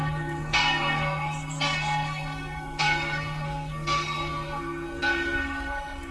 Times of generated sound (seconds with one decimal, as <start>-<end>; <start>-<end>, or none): 0.0-6.1